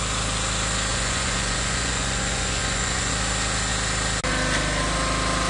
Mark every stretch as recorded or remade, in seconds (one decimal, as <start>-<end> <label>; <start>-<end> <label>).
0.0-0.9 recorded; 0.9-3.1 remade; 3.1-5.5 recorded